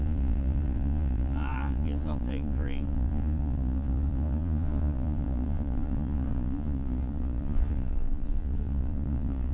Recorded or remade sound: remade